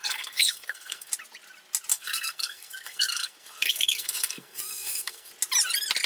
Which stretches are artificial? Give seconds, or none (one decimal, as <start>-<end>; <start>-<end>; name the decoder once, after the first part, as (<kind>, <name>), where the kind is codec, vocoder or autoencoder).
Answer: 0.0-1.1 (codec, SNAC); 1.9-5.3